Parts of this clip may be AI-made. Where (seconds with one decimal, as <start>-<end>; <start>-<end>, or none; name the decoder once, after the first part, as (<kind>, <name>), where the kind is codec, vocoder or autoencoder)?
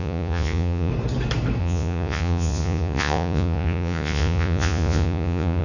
0.0-0.9 (vocoder, Vocos); 1.6-5.6